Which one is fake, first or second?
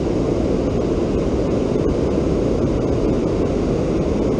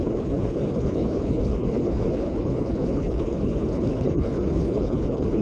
second